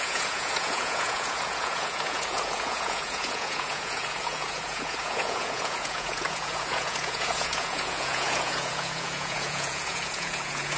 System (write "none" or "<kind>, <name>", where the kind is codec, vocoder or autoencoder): vocoder, Vocos